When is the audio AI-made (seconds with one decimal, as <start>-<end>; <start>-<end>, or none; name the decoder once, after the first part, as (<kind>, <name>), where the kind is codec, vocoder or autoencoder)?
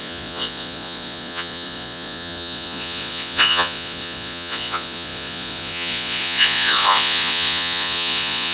0.0-8.5 (vocoder, Vocos)